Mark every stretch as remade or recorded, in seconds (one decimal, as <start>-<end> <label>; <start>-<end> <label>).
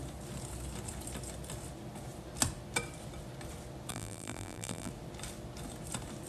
0.0-3.9 recorded; 3.9-4.9 remade; 4.9-6.3 recorded